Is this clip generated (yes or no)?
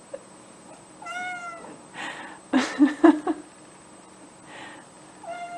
no